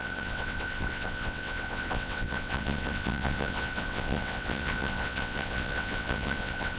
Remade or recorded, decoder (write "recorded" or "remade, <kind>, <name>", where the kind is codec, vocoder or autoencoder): remade, vocoder, WaveNeXt